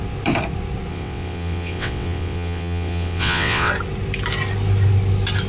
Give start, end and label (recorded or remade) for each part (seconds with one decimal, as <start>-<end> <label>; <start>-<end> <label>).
0.0-0.9 recorded; 0.9-3.7 remade; 3.7-5.5 recorded